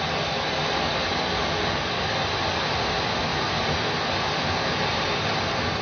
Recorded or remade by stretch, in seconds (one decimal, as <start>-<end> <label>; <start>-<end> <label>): 0.0-5.8 recorded